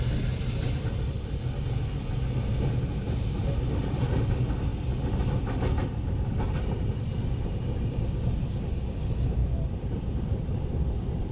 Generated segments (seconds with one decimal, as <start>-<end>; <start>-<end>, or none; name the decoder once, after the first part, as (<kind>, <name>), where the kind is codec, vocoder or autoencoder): 9.4-10.9 (vocoder, BigVGAN v2)